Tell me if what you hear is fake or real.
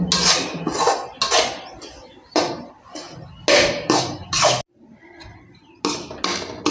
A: real